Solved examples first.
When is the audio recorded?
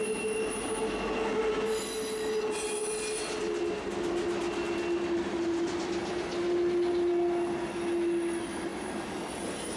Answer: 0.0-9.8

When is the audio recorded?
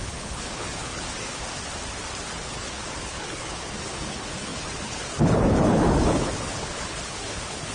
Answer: 1.4-2.3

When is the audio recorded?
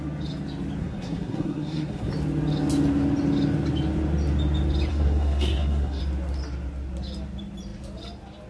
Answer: 0.0-0.8; 2.1-4.9; 6.0-8.5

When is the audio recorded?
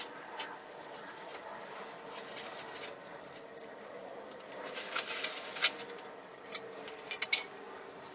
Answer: 0.0-8.1